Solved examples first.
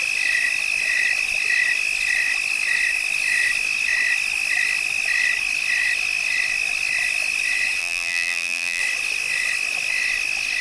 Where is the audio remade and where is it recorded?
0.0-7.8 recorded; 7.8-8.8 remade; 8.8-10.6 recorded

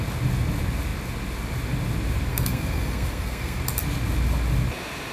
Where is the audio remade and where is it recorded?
0.0-2.3 recorded; 2.3-3.6 remade; 3.6-5.1 recorded